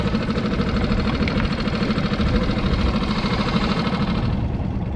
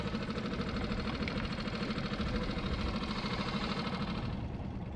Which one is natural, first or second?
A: second